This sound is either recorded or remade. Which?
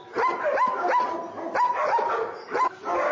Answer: recorded